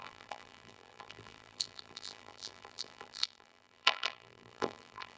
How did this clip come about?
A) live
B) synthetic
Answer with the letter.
B